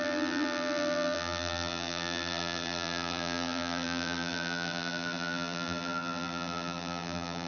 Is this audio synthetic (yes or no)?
yes